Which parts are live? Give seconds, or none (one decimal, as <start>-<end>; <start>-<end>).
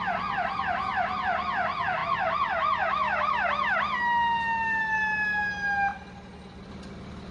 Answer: 0.0-5.9; 6.7-7.3